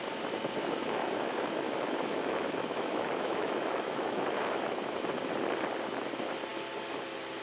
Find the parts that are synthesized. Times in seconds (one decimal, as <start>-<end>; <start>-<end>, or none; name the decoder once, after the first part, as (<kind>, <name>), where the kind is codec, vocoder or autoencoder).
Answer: 1.0-5.0 (autoencoder, DAC-VAE)

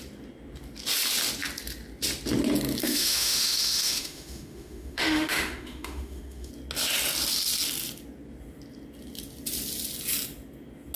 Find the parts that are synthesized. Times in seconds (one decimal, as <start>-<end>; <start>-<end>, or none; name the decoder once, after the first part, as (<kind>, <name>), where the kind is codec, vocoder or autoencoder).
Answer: 2.8-6.5 (autoencoder, DAC-VAE)

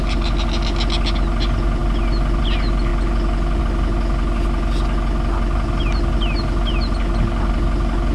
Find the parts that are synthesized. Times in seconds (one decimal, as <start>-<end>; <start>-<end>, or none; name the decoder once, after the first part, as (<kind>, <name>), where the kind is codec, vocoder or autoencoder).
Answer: none

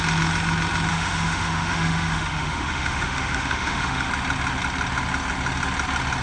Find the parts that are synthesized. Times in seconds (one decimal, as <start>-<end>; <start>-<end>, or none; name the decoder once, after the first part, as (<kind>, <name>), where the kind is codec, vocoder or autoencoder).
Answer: 0.9-4.1 (autoencoder, DAC-VAE)

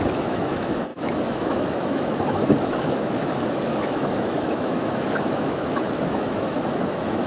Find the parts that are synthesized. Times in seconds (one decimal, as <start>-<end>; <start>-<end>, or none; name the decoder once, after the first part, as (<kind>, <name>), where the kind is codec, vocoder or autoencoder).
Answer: 0.0-7.3 (autoencoder, DAC-VAE)

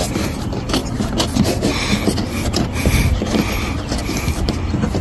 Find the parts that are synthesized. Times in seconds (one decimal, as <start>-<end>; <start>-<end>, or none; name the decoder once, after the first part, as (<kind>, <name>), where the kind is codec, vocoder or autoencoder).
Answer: none

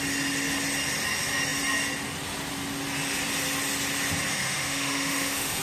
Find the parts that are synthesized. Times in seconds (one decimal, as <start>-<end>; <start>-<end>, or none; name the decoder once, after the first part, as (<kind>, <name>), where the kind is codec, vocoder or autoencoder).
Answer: 4.3-5.6 (autoencoder, DAC-VAE)

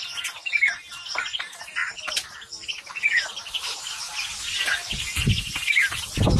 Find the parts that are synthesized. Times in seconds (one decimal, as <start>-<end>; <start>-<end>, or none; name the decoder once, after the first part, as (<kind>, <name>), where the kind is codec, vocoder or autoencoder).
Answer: none